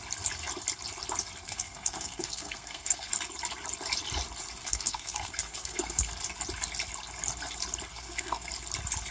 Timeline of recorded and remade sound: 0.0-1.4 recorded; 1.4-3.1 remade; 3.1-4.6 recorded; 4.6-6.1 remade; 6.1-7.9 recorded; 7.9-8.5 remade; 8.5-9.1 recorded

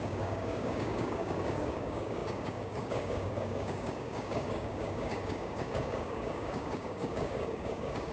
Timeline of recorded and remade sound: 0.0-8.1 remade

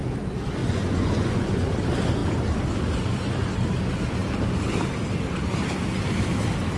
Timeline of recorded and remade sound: 0.0-0.6 recorded; 0.6-1.7 remade; 1.7-6.8 recorded